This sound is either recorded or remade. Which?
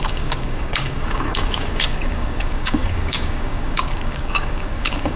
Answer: remade